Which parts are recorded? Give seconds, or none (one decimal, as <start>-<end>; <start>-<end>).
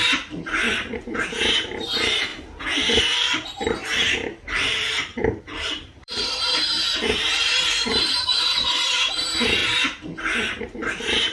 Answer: 2.3-3.0; 9.6-10.6